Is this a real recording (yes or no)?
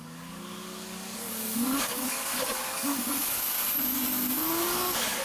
no